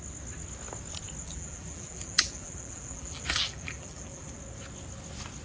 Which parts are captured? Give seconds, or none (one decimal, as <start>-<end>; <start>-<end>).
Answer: 0.0-1.2; 4.4-5.4